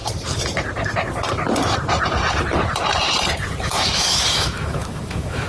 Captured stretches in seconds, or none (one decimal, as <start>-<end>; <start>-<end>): 0.0-3.7